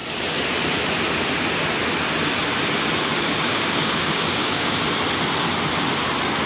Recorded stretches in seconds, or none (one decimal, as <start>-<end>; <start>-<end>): 0.0-3.5; 4.7-6.5